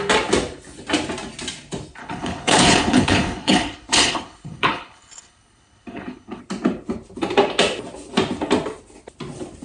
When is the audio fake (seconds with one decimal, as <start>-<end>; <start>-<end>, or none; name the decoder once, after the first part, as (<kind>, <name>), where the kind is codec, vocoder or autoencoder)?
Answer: 2.0-6.4 (codec, HILCodec)